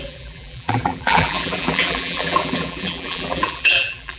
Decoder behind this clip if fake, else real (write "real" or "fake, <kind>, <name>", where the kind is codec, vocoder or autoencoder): fake, vocoder, BigVGAN v2